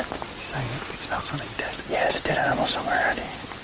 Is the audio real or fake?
real